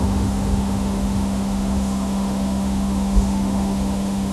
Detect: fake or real fake